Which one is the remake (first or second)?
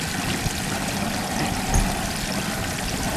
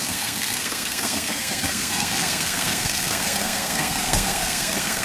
second